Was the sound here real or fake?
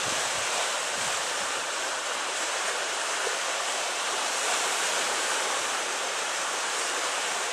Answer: fake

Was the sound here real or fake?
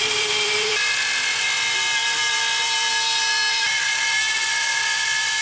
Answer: fake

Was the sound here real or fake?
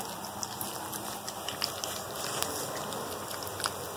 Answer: real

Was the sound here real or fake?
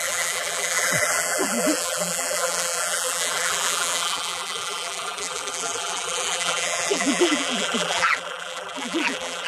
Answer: fake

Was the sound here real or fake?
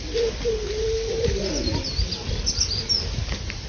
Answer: fake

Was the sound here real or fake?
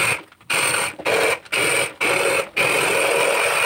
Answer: real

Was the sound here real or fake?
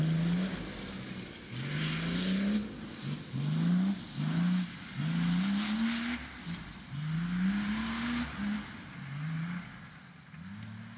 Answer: real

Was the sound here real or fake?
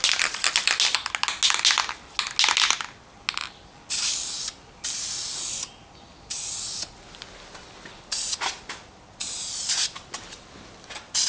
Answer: real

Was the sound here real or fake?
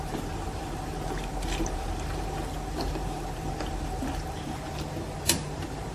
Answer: fake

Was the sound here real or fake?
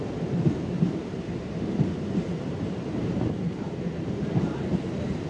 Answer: fake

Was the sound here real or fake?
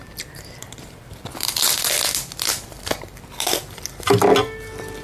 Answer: real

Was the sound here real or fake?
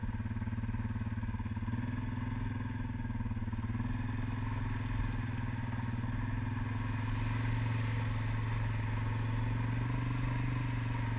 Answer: real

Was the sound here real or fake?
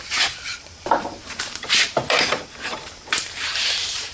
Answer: fake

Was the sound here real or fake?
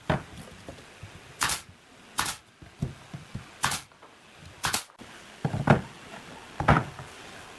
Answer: real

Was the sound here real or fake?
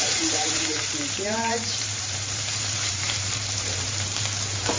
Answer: fake